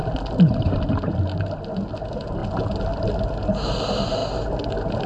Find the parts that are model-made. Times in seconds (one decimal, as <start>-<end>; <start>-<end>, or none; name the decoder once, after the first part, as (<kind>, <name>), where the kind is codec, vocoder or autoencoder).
none